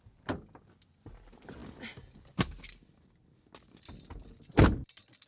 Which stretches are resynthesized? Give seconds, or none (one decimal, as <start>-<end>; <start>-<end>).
none